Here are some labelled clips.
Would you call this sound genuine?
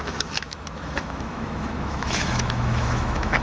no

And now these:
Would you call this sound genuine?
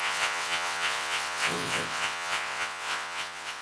no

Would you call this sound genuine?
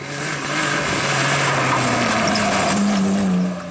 yes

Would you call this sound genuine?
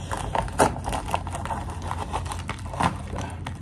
yes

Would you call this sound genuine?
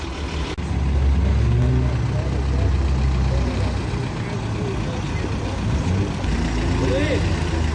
yes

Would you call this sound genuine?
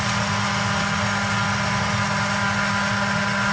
yes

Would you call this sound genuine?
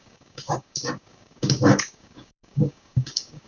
no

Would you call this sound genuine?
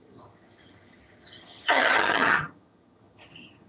no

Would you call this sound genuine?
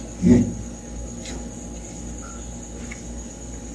yes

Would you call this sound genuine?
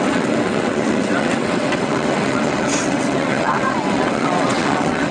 no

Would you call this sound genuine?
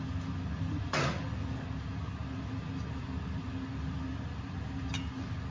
yes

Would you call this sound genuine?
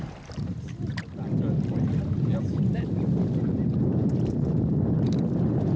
yes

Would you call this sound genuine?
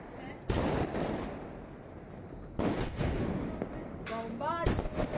yes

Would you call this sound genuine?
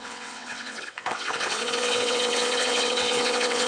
no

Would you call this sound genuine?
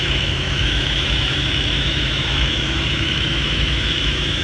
no